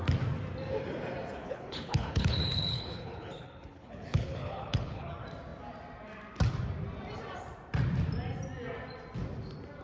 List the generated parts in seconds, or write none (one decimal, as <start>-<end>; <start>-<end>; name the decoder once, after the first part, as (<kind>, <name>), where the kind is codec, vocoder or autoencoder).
1.4-5.1 (codec, HILCodec)